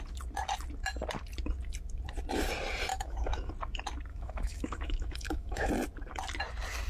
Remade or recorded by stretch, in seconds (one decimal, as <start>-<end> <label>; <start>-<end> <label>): 0.0-2.9 recorded; 2.9-3.5 remade; 3.5-4.1 recorded; 4.1-5.7 remade; 5.7-6.9 recorded

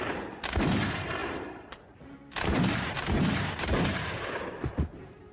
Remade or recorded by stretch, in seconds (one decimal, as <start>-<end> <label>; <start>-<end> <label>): 0.0-5.3 remade

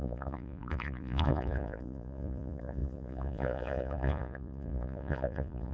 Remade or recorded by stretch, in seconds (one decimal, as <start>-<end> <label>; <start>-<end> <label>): 0.0-5.7 remade

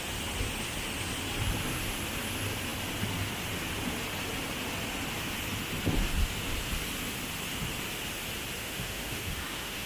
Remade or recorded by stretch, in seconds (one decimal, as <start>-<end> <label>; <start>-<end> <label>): 0.0-8.6 recorded; 8.6-9.9 remade

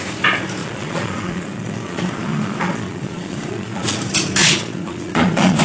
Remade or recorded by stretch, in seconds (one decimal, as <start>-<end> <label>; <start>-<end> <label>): 0.0-0.6 recorded; 0.6-4.0 remade; 4.0-4.4 recorded; 4.4-5.6 remade